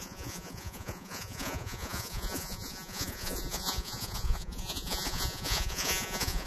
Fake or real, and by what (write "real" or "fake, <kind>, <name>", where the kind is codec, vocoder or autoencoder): fake, vocoder, Vocos